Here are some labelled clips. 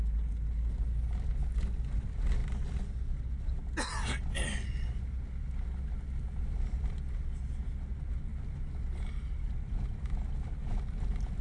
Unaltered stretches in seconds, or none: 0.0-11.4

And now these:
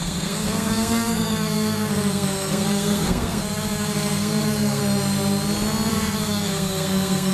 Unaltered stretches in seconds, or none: 4.8-5.9

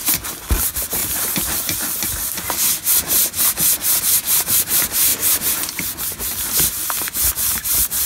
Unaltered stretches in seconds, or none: 0.0-0.6; 1.0-4.0; 5.1-7.3

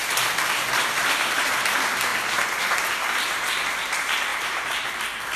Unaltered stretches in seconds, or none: 0.0-1.0; 1.7-4.3; 4.9-5.4

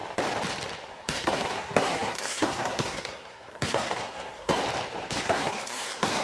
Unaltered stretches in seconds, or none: 0.0-0.9; 4.6-5.1